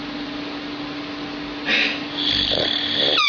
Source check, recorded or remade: recorded